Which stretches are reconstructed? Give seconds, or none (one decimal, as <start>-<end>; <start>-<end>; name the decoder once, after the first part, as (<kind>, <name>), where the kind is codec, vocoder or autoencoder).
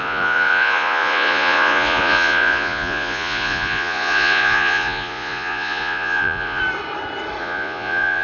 0.0-6.6 (vocoder, Vocos); 7.4-8.2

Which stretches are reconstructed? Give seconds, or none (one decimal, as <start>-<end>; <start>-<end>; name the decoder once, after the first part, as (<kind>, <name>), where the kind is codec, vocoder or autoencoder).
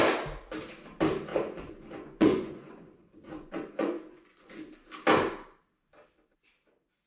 1.3-4.5 (vocoder, Vocos)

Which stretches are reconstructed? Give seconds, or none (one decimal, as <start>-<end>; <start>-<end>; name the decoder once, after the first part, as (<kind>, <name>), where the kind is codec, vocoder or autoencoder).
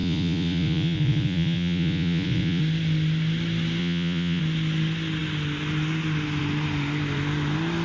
0.0-2.6 (vocoder, Vocos); 3.8-4.4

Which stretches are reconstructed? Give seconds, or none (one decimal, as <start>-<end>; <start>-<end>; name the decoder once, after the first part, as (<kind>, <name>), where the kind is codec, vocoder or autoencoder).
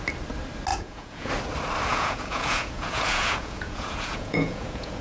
0.7-1.3 (vocoder, Vocos); 1.9-5.0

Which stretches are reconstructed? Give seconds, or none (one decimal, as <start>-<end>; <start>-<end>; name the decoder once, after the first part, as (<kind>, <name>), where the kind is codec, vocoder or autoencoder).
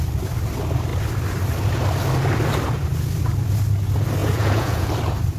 4.2-4.9 (vocoder, Vocos)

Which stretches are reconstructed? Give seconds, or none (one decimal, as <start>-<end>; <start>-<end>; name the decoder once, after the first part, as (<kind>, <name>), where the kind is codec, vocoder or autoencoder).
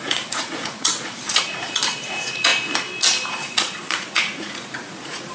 0.0-2.5 (vocoder, Vocos); 3.3-5.3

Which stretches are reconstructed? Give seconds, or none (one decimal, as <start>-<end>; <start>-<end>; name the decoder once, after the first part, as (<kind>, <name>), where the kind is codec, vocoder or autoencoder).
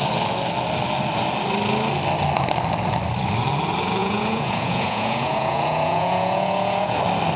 4.0-7.0 (vocoder, Vocos)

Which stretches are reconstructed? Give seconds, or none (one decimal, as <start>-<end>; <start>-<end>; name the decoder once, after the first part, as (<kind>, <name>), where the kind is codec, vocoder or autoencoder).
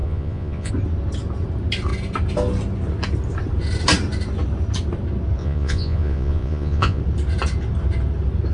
0.0-0.7 (vocoder, Vocos); 5.4-7.0